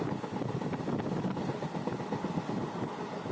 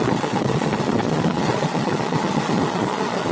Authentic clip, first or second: first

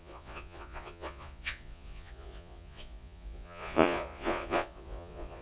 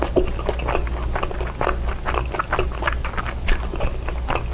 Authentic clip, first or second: second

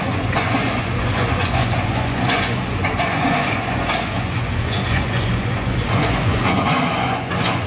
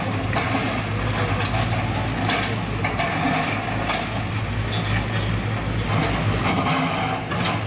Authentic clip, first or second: second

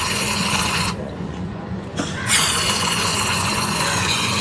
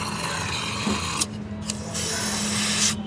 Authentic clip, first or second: second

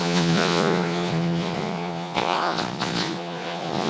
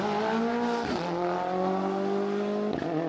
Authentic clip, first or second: second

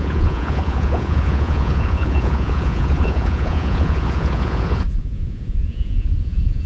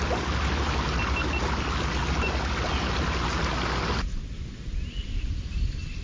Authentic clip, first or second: second